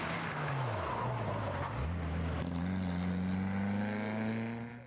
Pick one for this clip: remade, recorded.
recorded